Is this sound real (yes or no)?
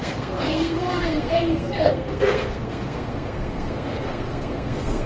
no